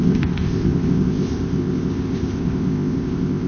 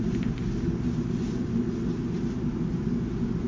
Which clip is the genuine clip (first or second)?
second